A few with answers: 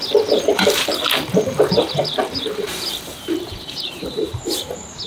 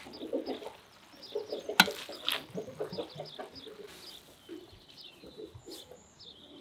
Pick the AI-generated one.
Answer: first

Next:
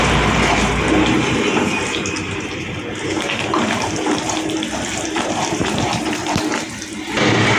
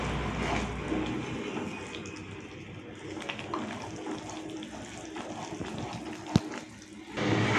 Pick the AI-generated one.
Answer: first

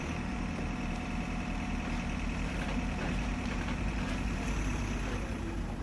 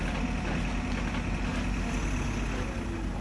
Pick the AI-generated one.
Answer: first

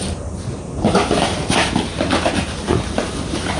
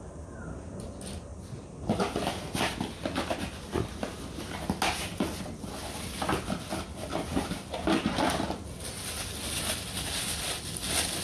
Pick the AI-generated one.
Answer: first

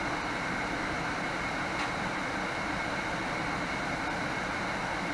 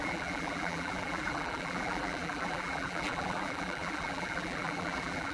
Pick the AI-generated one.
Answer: second